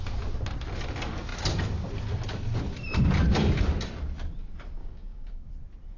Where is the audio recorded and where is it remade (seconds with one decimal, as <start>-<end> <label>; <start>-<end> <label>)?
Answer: 0.0-4.8 recorded; 4.8-5.5 remade; 5.5-6.0 recorded